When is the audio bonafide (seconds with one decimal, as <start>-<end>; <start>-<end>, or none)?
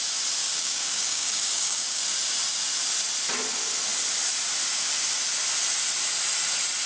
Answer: 0.0-0.4; 2.0-6.9